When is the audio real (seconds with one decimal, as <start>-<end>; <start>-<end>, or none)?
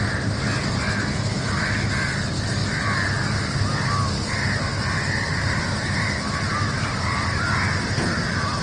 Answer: 0.0-5.3